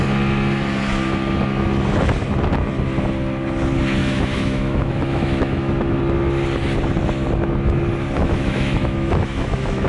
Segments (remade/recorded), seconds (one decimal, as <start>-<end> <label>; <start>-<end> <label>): 0.0-4.0 recorded; 4.0-6.0 remade; 6.0-8.2 recorded; 8.2-9.9 remade

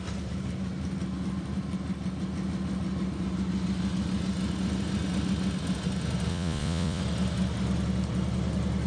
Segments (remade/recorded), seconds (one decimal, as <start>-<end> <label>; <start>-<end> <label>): 0.0-6.3 recorded; 6.3-7.0 remade; 7.0-8.9 recorded

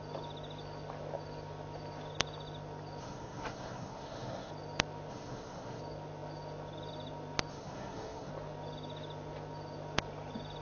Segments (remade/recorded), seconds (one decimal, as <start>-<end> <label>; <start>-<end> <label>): 0.0-3.0 recorded; 3.0-4.5 remade; 4.5-5.1 recorded; 5.1-5.8 remade; 5.8-7.5 recorded; 7.5-8.3 remade; 8.3-10.6 recorded

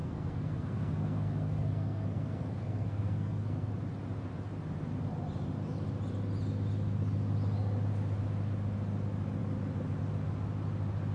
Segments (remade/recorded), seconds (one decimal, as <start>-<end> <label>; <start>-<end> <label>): 0.0-3.7 remade; 3.7-11.1 recorded